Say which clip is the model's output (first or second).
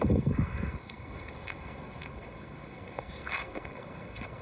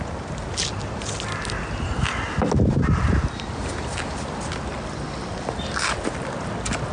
first